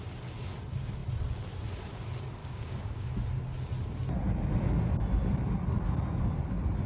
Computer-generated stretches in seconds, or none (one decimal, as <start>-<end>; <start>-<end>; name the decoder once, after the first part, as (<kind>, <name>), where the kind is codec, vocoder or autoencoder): 2.4-3.1 (codec, DAC)